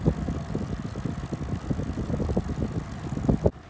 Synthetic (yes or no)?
no